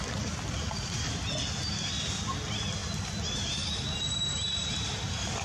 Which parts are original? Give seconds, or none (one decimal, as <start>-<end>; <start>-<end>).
0.0-2.8; 3.8-5.4